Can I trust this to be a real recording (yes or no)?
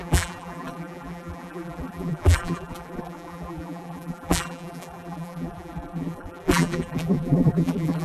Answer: no